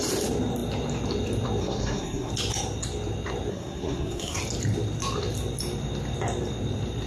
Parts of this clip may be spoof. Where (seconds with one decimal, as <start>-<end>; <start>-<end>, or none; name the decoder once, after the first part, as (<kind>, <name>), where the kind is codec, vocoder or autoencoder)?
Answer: 1.6-2.3 (codec, SNAC); 3.5-4.4